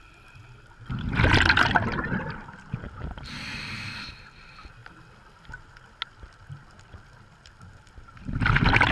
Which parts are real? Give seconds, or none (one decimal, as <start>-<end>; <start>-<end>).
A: 0.4-2.3; 4.8-6.3